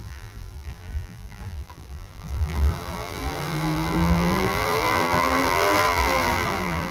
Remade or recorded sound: remade